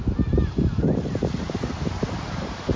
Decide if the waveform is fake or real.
real